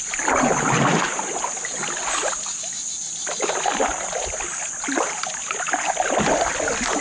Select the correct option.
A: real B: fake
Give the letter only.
A